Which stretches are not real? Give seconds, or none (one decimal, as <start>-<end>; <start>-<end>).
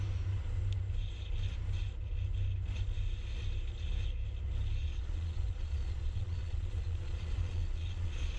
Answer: 4.8-8.4